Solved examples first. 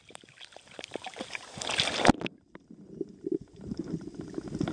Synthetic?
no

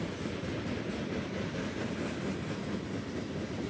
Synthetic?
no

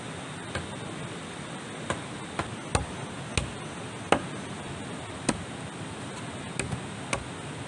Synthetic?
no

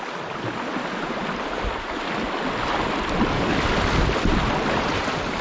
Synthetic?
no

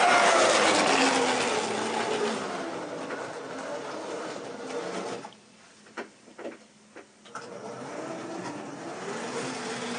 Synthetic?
no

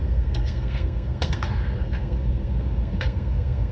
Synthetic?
yes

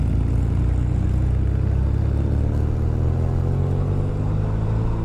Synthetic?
no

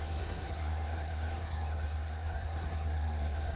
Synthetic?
yes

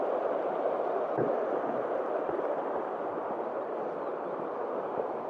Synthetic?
no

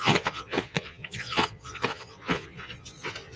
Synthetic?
yes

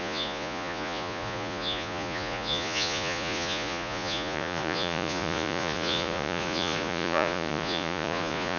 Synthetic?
yes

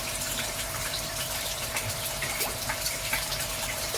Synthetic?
yes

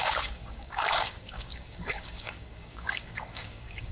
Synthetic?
yes